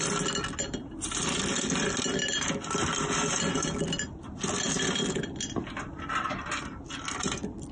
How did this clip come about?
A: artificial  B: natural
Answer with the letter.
B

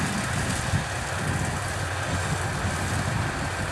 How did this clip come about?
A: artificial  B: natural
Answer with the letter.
B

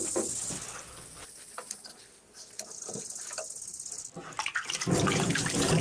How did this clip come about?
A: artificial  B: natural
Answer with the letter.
B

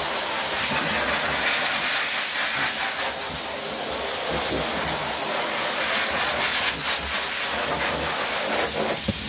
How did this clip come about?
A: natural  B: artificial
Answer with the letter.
A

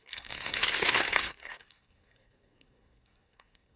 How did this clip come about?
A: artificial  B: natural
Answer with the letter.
A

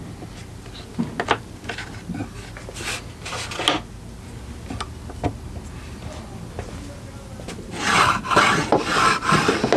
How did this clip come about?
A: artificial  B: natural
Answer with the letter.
B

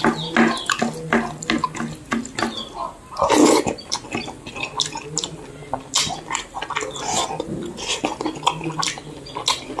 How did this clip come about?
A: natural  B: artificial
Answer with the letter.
A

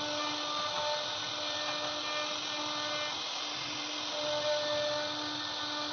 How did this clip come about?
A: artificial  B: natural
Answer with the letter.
B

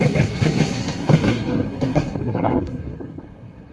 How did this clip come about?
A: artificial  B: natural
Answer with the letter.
A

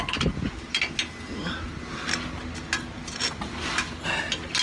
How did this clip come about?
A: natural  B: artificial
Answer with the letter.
A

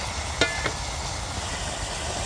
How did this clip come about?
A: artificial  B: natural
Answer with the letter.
B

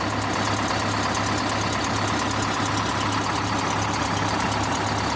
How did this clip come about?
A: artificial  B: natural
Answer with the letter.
B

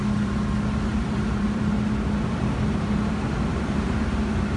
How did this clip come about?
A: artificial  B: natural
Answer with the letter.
B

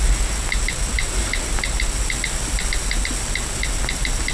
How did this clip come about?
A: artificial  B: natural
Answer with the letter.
B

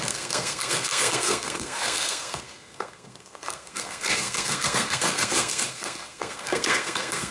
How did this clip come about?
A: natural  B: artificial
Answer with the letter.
B